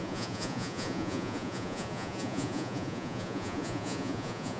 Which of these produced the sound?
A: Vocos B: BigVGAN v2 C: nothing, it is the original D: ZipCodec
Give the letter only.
A